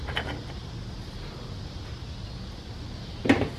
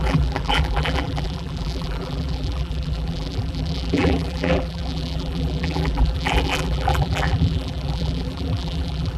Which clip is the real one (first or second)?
first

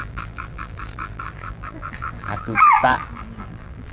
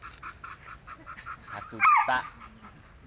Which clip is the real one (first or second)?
second